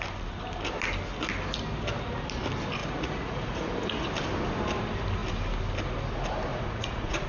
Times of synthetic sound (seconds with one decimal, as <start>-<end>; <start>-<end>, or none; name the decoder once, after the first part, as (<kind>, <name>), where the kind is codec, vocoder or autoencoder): 2.8-3.7 (vocoder, Vocos); 6.5-7.3